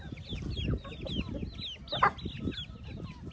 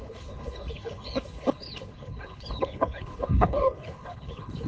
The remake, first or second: second